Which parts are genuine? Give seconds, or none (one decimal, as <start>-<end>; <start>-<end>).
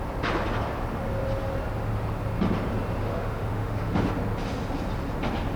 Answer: 0.0-3.0; 4.1-5.6